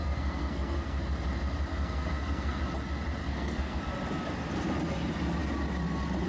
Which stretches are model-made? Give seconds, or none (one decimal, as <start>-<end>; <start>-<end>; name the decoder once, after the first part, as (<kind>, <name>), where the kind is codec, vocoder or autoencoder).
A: 0.0-1.0 (codec, SNAC); 1.7-2.6; 3.2-3.8